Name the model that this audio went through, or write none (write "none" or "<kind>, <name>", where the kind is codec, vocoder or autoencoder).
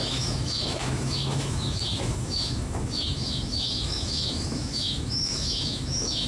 autoencoder, DAC-VAE